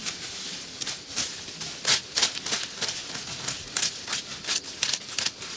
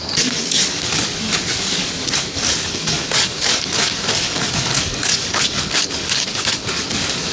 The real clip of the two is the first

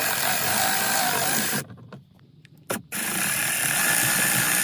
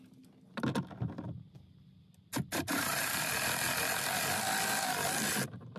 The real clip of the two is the second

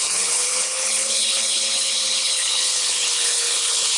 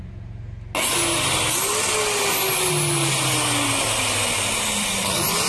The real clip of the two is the second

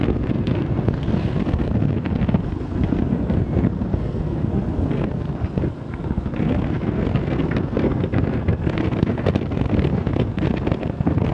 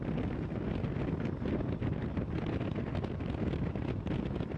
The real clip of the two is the second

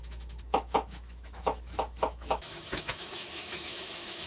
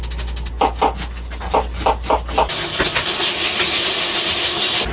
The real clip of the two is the second